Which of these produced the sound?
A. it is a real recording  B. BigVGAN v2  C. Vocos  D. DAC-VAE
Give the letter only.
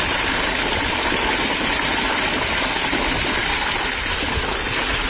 B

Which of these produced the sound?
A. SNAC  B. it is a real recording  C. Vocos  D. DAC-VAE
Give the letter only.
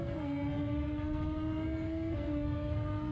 A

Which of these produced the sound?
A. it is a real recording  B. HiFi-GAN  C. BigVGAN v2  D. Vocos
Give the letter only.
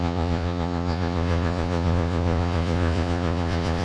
D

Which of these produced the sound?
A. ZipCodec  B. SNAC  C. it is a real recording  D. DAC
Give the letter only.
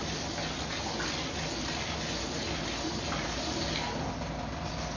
C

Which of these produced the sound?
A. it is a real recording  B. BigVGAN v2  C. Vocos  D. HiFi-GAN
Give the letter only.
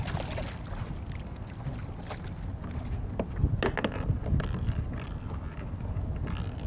A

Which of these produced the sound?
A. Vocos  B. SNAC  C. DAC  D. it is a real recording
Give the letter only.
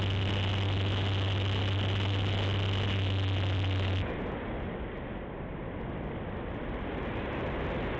D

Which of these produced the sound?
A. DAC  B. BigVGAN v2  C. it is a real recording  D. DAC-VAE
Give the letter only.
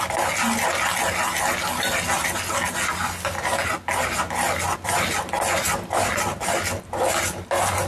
C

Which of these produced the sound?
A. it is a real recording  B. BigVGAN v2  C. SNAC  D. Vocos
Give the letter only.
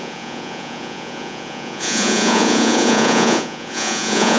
D